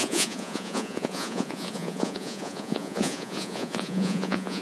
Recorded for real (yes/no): no